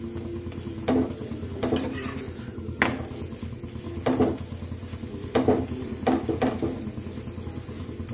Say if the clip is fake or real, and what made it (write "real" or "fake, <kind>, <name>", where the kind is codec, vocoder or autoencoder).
real